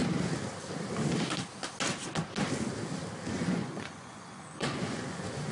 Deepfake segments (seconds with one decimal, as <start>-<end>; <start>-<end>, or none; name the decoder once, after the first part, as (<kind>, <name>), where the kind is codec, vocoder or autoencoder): 3.3-5.5 (vocoder, Vocos)